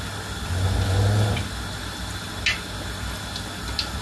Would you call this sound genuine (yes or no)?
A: yes